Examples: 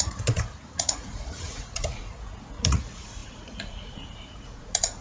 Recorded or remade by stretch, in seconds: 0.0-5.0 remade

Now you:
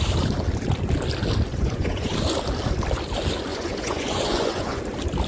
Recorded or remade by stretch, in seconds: 0.0-1.5 recorded; 1.5-2.1 remade; 2.1-3.5 recorded; 3.5-4.8 remade; 4.8-5.3 recorded

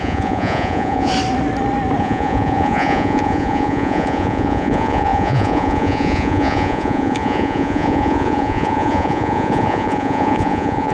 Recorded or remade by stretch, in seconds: 0.0-1.1 remade; 1.1-2.0 recorded; 2.0-10.9 remade

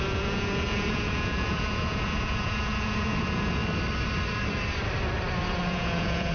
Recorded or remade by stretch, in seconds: 0.0-3.6 remade; 3.6-5.7 recorded; 5.7-6.3 remade

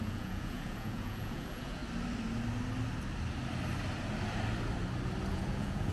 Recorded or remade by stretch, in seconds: 0.0-1.8 remade; 1.8-5.3 recorded; 5.3-5.9 remade

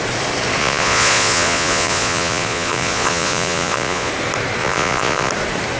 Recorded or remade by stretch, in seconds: 0.0-0.6 recorded; 0.6-4.1 remade; 4.1-4.6 recorded; 4.6-5.3 remade; 5.3-5.8 recorded

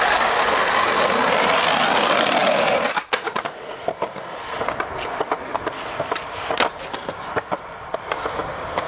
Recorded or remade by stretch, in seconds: 0.0-8.9 recorded